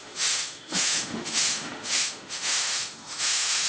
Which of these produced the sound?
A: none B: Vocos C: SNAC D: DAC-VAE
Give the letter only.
D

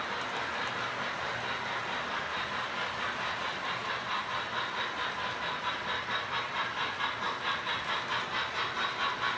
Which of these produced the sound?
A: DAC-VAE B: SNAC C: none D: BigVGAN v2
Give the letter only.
C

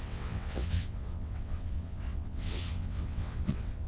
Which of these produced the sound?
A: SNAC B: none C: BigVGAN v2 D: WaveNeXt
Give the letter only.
D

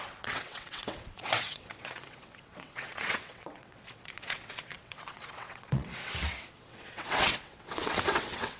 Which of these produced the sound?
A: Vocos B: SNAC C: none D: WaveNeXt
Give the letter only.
D